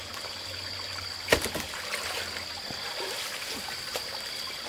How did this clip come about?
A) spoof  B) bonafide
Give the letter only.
B